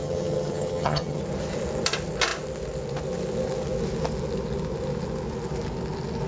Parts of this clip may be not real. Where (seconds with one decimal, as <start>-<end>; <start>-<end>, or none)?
0.0-1.2